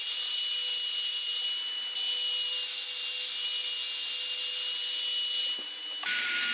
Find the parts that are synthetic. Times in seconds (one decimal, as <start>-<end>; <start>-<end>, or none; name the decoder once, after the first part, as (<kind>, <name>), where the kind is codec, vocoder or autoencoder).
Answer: 0.0-2.2 (vocoder, BigVGAN v2); 5.4-6.5